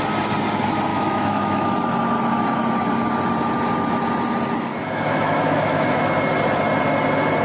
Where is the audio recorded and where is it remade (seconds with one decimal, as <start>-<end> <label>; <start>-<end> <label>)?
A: 0.0-0.9 recorded; 0.9-1.7 remade; 1.7-4.7 recorded; 4.7-6.0 remade; 6.0-7.4 recorded